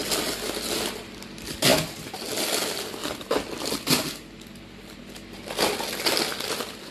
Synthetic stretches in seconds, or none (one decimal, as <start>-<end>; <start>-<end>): none

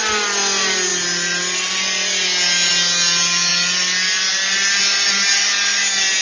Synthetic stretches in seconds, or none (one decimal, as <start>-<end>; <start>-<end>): none

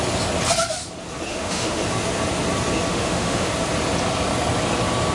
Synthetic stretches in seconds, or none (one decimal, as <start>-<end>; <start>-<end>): 1.3-1.8; 2.9-3.5

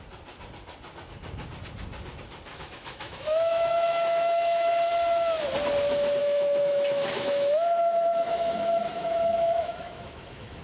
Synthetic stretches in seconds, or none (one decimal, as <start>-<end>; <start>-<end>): 2.5-4.7; 6.2-10.6

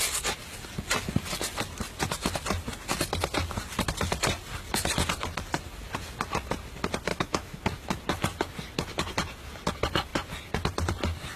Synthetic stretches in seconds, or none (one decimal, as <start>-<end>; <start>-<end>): 7.1-7.6